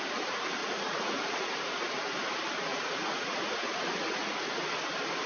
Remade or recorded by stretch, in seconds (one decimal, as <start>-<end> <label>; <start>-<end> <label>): 0.0-0.6 recorded; 0.6-1.9 remade; 1.9-2.7 recorded; 2.7-4.5 remade; 4.5-5.3 recorded